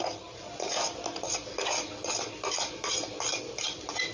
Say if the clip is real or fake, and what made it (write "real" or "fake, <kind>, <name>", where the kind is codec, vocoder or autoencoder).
real